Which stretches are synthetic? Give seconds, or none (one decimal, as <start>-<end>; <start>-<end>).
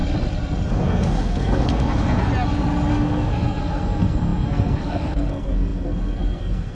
0.7-2.3; 2.9-6.7